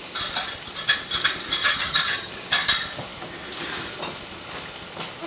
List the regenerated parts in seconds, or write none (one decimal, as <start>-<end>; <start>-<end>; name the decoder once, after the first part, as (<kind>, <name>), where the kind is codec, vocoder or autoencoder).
1.6-2.3 (vocoder, HiFi-GAN)